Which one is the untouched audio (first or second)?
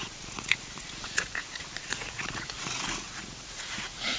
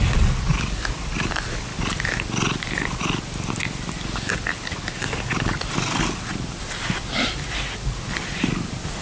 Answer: second